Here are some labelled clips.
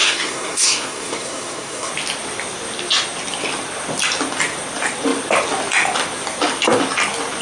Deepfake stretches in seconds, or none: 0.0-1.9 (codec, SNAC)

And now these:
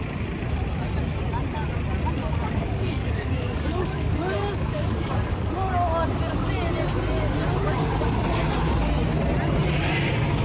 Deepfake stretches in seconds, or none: 2.2-5.5 (codec, DAC)

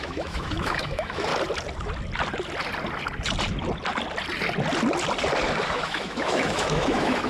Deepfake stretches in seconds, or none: 0.0-1.3 (autoencoder, DAC-VAE); 5.7-7.3

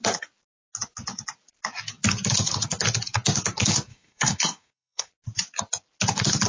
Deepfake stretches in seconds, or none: 3.9-5.1 (codec, SNAC)

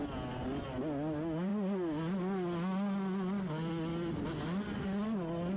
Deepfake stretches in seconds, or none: none

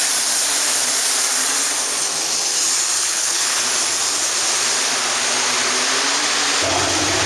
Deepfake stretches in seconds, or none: 3.0-3.6 (codec, HILCodec)

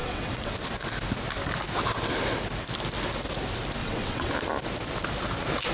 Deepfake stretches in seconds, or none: 0.0-0.5 (vocoder, WaveNeXt); 3.8-4.3